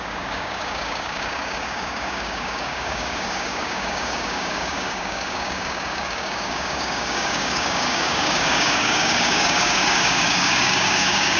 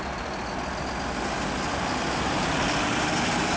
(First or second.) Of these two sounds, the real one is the second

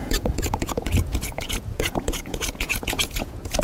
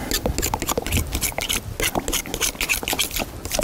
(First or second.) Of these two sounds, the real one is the second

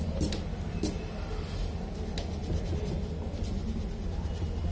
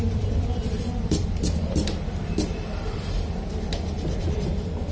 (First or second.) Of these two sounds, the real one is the first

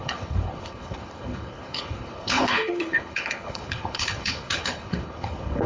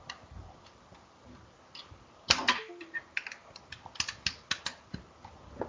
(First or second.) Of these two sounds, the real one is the second